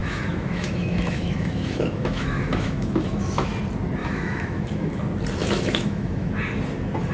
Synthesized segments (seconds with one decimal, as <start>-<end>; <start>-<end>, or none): 0.0-3.5; 4.0-5.0; 5.4-6.3